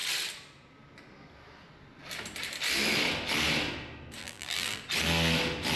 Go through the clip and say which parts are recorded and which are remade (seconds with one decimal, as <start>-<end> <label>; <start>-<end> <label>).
0.0-4.2 recorded; 4.2-4.8 remade; 4.8-5.8 recorded